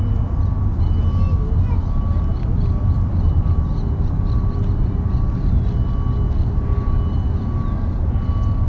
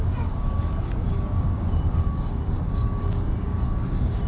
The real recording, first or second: first